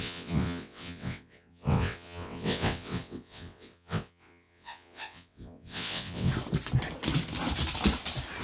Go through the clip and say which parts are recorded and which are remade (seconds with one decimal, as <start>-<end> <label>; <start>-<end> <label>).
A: 0.0-6.3 remade; 6.3-8.4 recorded